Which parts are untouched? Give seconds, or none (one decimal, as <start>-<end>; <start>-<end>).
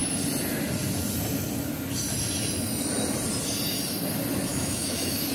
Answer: 0.0-4.5